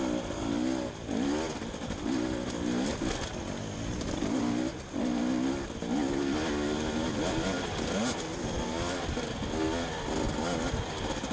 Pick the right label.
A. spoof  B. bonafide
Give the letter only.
B